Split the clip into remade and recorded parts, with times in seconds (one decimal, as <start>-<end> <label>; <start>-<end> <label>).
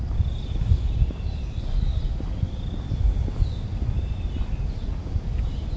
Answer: 0.0-5.8 recorded